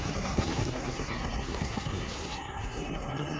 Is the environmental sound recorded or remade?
remade